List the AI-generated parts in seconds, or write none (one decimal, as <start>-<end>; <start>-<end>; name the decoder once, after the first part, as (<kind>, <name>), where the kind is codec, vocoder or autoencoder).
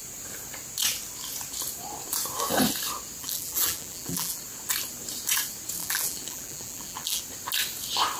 3.2-4.4 (vocoder, BigVGAN v2); 5.8-7.2